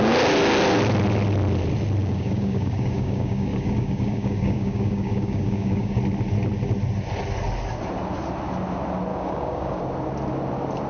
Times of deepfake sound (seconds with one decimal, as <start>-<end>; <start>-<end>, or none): 2.0-6.0; 9.1-9.8